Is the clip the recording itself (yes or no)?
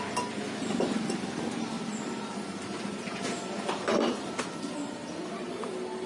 yes